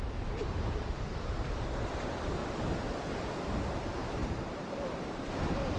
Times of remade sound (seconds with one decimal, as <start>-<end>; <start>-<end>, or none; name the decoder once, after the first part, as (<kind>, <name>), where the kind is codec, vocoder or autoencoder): 0.0-2.4 (vocoder, BigVGAN v2); 3.8-5.8